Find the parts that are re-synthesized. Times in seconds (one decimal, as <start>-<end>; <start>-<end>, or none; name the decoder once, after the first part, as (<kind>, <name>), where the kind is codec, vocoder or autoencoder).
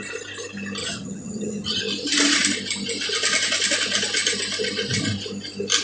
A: 0.8-1.8 (vocoder, HiFi-GAN)